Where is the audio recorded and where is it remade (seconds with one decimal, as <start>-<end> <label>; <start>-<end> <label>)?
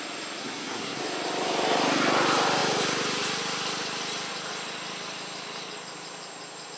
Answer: 0.0-0.4 recorded; 0.4-1.0 remade; 1.0-6.8 recorded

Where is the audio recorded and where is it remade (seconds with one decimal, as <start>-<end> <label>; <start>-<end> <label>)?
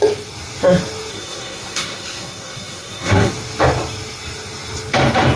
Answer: 0.0-1.1 recorded; 1.1-3.3 remade; 3.3-5.4 recorded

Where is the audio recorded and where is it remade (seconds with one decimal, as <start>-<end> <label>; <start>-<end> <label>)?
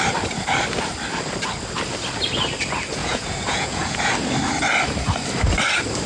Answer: 0.0-3.0 recorded; 3.0-4.0 remade; 4.0-6.1 recorded